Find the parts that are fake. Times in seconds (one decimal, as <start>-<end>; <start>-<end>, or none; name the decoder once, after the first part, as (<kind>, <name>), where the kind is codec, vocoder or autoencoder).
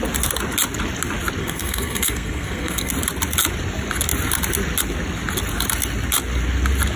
1.4-2.9 (codec, SNAC)